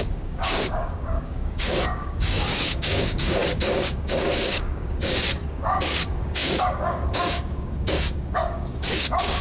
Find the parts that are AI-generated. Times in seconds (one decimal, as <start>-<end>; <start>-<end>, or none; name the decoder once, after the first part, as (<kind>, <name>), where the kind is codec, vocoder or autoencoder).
0.0-9.4 (codec, DAC)